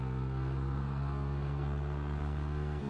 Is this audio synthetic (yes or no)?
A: yes